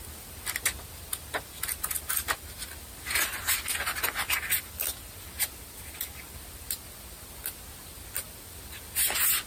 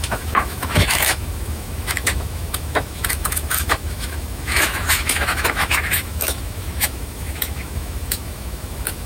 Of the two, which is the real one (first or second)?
first